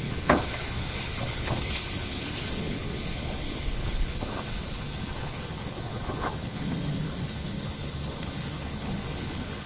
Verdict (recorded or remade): remade